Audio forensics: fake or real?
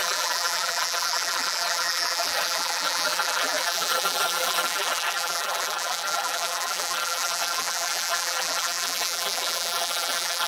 fake